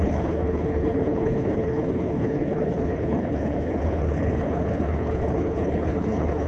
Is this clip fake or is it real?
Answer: fake